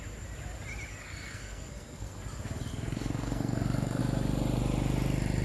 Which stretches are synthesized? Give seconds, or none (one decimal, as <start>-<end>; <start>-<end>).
1.0-2.2; 2.7-4.0